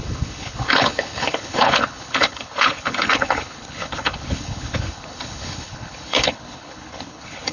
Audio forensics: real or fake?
fake